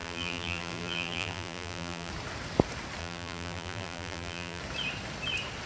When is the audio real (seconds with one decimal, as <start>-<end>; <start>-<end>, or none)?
2.1-3.0; 4.6-5.7